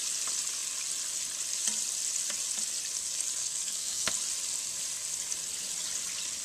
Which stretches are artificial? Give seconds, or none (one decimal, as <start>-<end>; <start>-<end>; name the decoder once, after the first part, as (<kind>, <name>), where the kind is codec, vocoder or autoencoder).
3.4-4.1 (codec, SNAC)